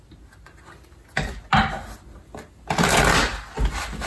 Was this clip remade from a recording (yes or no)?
no